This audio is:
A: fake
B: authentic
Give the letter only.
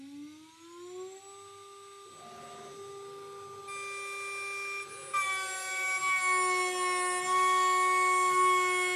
B